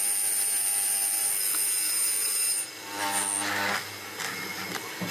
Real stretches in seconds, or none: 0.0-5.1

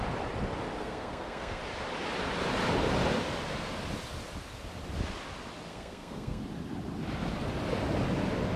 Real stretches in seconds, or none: 0.0-0.8; 1.6-5.7; 6.4-8.6

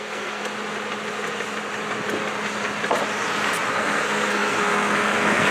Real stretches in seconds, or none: 0.4-3.7

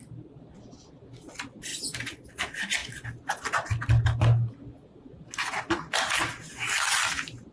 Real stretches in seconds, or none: 0.0-7.5

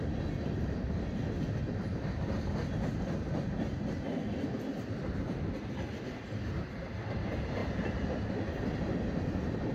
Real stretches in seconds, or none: 0.0-9.7

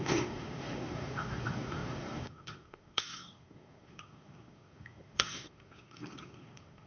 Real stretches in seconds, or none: none

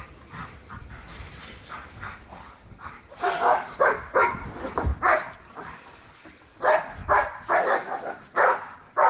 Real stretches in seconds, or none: 0.0-1.9; 2.9-9.1